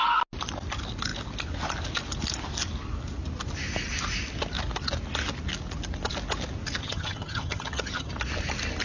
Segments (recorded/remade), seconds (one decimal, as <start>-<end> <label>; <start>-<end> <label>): 0.0-6.8 recorded; 6.8-8.1 remade; 8.1-8.8 recorded